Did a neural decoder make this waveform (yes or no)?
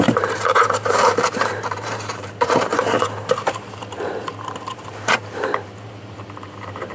yes